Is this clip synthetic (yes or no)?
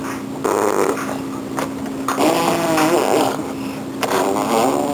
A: no